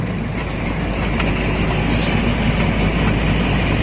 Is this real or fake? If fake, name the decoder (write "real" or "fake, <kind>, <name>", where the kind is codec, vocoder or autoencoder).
real